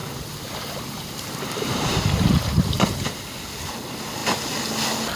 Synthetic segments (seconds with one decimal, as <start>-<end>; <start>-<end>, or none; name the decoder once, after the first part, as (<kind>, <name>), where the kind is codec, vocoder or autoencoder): 0.0-3.1 (vocoder, BigVGAN v2)